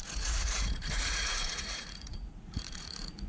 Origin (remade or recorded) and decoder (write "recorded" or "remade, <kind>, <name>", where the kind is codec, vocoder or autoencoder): remade, vocoder, Vocos